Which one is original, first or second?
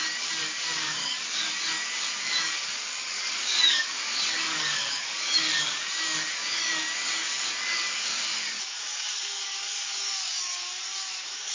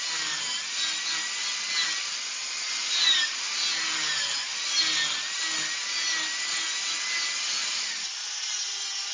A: second